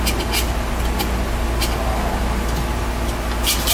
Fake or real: real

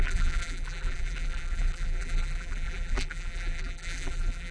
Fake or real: fake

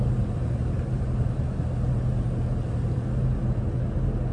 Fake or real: real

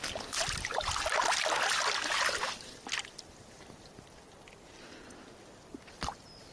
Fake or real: real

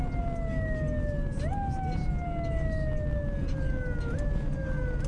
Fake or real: real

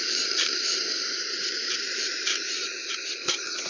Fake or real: fake